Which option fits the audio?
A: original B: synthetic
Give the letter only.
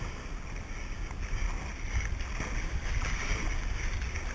A